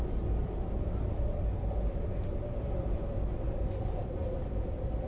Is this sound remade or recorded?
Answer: recorded